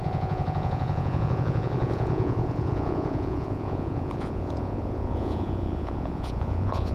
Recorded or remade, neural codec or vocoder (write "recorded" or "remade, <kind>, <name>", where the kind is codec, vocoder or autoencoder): remade, vocoder, Vocos